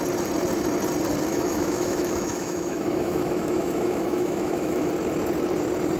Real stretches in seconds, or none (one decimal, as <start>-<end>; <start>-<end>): 0.0-1.3; 4.9-6.0